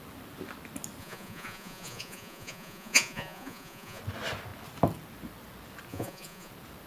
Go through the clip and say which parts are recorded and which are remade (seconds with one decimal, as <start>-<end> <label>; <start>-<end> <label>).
0.0-1.0 recorded; 1.0-4.0 remade; 4.0-5.9 recorded; 5.9-6.5 remade; 6.5-6.9 recorded